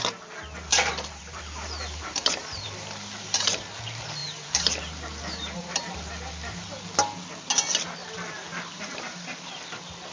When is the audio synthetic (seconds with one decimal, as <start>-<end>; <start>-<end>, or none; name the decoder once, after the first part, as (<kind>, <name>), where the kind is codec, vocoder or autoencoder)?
0.7-3.6 (vocoder, BigVGAN v2); 4.2-6.7; 8.0-9.6